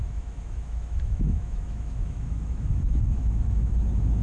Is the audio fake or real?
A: fake